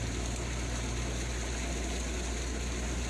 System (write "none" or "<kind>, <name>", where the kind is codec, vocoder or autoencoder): none